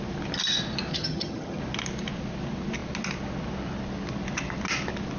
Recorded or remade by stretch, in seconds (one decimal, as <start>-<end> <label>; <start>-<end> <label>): 0.0-0.9 recorded; 0.9-1.6 remade; 1.6-5.2 recorded